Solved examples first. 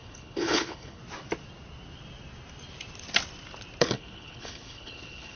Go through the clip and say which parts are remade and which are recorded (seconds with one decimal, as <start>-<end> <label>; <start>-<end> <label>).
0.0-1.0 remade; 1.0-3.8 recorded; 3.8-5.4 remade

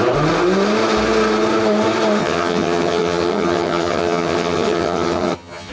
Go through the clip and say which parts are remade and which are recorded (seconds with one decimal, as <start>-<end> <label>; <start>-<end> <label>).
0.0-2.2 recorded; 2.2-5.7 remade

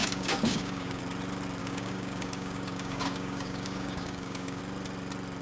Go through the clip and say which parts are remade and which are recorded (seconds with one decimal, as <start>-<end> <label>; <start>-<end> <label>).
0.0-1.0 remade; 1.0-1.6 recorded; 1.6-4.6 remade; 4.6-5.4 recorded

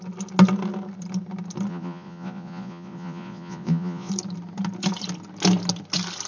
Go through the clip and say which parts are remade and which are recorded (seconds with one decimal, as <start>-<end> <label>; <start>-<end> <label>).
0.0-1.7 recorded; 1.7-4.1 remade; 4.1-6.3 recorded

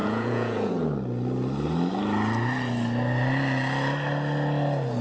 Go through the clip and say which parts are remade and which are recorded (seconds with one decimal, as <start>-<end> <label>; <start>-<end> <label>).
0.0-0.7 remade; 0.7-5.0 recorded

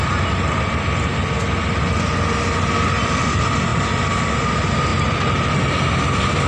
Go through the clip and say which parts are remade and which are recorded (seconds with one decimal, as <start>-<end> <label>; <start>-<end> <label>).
0.0-6.5 recorded